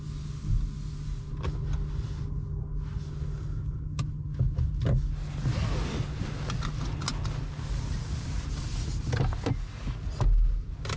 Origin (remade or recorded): recorded